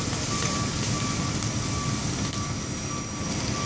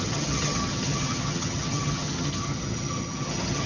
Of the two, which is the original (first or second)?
first